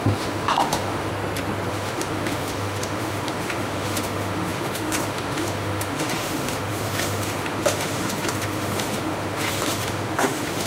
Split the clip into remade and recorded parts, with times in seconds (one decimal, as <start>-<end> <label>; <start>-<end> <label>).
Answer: 0.0-1.1 remade; 1.1-1.7 recorded; 1.7-10.7 remade